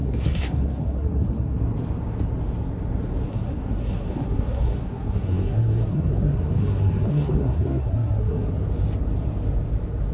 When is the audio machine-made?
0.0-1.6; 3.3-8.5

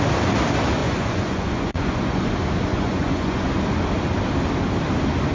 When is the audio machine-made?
0.8-2.3; 2.7-3.5

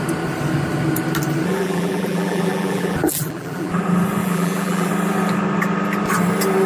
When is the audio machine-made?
1.5-3.8; 4.2-4.9

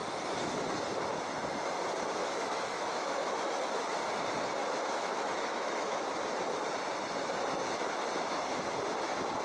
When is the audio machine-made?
2.2-4.0; 4.6-6.1

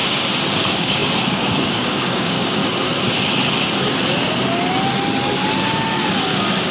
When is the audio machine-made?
0.5-2.6